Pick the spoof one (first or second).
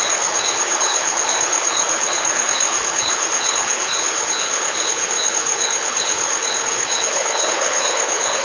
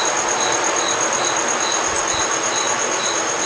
first